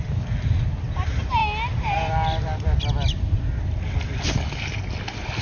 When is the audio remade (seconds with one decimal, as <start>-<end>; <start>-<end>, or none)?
none